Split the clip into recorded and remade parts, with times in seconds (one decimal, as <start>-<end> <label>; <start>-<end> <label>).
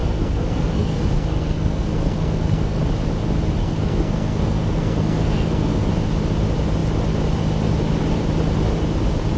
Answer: 0.0-2.8 remade; 2.8-3.6 recorded; 3.6-5.9 remade; 5.9-9.4 recorded